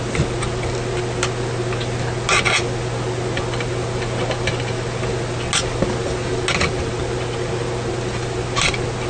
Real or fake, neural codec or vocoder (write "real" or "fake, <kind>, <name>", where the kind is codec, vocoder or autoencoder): real